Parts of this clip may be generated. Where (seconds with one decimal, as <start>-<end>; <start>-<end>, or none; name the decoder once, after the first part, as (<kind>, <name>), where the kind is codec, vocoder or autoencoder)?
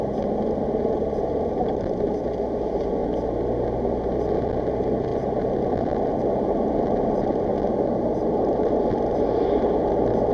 0.0-3.0 (vocoder, BigVGAN v2); 4.4-7.5; 8.1-10.3